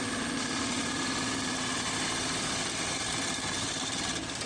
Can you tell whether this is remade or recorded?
remade